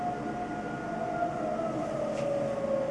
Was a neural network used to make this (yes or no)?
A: no